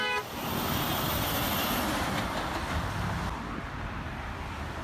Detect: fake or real real